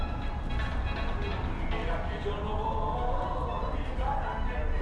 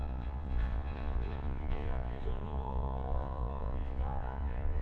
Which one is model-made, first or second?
second